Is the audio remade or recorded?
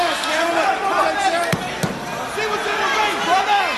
recorded